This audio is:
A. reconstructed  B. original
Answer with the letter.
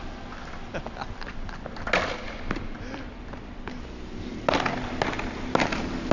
B